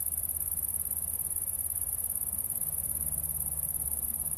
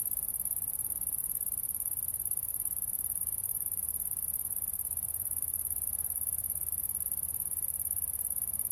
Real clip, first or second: first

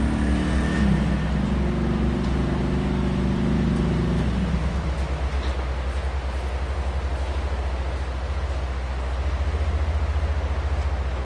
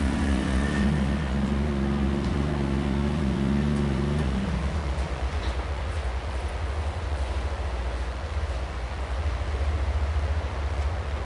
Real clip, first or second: first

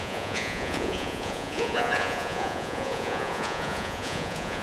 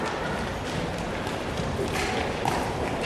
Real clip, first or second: second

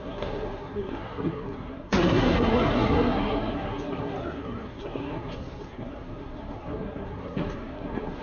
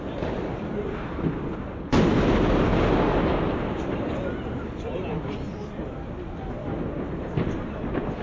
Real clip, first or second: second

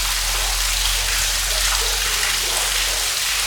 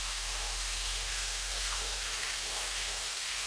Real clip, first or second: first